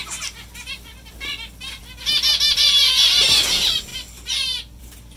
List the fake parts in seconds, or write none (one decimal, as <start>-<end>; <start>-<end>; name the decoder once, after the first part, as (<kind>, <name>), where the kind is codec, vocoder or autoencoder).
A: none